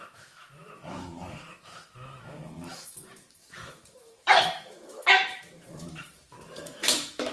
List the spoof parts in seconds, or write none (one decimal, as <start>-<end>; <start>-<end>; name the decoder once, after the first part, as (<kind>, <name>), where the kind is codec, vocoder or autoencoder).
0.0-7.3 (autoencoder, DAC-VAE)